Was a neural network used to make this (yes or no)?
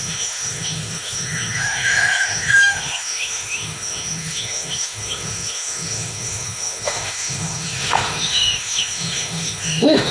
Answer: yes